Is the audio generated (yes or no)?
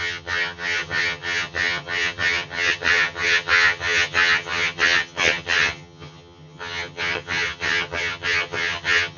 yes